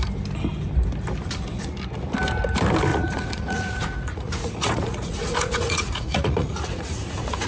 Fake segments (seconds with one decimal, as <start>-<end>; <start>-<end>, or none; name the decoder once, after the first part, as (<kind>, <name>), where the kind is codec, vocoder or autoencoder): 2.9-7.5 (vocoder, Vocos)